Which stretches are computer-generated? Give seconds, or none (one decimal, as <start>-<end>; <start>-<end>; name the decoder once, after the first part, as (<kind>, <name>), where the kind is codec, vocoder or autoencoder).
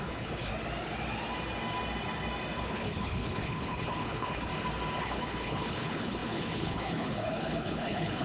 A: 0.0-0.5 (codec, HILCodec); 2.6-4.5; 5.0-8.2